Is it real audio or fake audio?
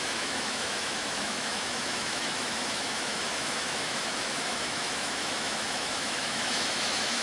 fake